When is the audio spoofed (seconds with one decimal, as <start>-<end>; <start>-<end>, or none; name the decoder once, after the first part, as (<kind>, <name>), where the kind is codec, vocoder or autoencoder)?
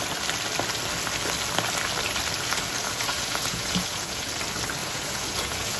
2.8-4.3 (vocoder, Vocos); 4.8-5.8